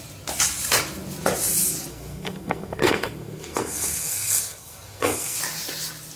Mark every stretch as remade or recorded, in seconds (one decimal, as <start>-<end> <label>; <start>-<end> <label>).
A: 0.0-1.9 recorded; 1.9-5.4 remade; 5.4-6.2 recorded